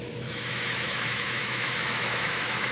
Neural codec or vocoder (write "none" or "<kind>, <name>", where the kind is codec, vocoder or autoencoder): autoencoder, DAC-VAE